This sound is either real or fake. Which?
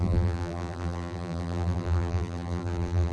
fake